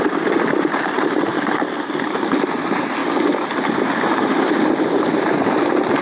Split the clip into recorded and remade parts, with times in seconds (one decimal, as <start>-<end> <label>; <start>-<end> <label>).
0.0-6.0 recorded